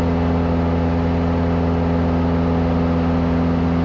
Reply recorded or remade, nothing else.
recorded